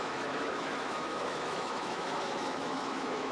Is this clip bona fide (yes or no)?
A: no